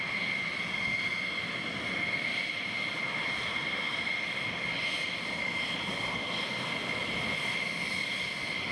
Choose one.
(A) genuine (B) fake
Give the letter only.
A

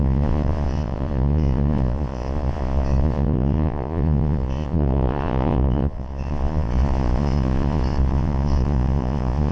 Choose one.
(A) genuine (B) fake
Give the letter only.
B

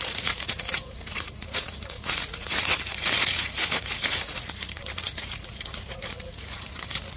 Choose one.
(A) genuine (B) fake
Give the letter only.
B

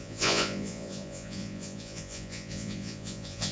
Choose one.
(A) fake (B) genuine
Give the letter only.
A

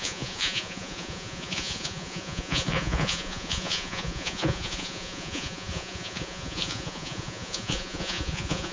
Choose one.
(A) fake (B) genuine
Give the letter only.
A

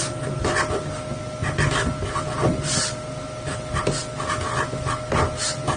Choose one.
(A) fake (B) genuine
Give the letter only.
B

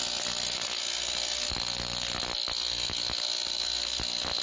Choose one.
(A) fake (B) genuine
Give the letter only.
B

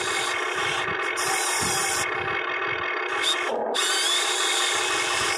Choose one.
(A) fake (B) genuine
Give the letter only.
B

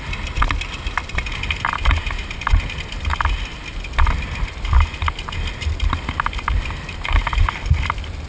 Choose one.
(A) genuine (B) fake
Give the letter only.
A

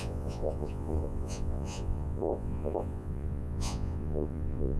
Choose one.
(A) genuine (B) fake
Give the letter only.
B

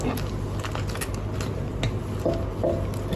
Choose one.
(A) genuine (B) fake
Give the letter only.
A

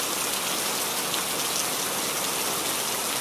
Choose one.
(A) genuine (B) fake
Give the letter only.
A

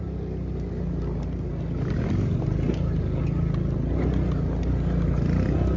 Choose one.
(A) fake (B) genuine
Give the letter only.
B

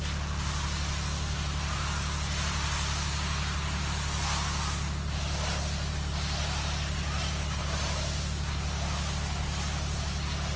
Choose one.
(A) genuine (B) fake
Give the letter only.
A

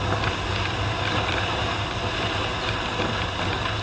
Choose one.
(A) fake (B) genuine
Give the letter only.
B